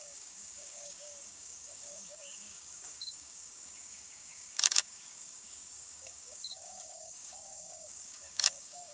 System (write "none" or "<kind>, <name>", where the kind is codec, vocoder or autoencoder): codec, DAC